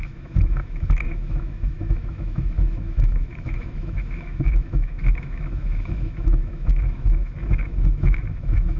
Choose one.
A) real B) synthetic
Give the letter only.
B